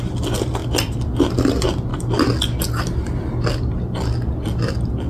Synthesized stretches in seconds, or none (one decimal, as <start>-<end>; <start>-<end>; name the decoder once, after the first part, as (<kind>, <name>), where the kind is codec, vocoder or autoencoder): none